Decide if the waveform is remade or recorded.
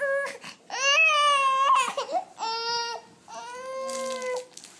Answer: recorded